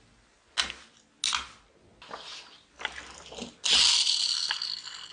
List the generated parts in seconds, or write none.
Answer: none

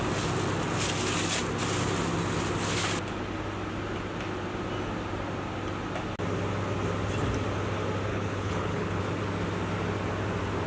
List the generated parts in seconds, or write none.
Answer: 8.1-9.0 (codec, HILCodec)

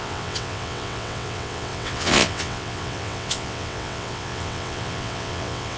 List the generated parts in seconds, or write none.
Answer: 0.0-5.8 (vocoder, WaveNeXt)

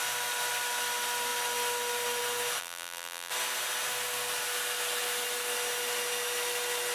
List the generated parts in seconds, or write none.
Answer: 2.6-3.3 (vocoder, BigVGAN v2)

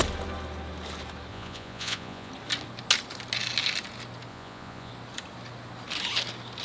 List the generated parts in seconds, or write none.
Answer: 1.3-2.3 (vocoder, Vocos); 4.3-4.9

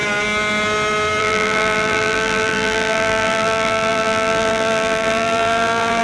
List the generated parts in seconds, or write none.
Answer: 1.2-6.0 (vocoder, BigVGAN v2)